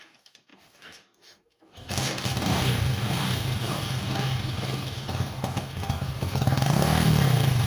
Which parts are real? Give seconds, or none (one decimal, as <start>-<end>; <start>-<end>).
none